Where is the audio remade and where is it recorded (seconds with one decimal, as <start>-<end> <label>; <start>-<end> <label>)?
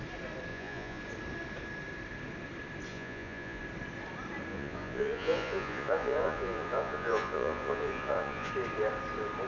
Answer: 0.0-0.5 recorded; 0.5-1.0 remade; 1.0-2.9 recorded; 2.9-3.6 remade; 3.6-4.5 recorded; 4.5-8.5 remade; 8.5-9.5 recorded